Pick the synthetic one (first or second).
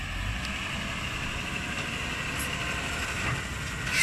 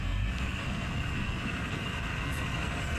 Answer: second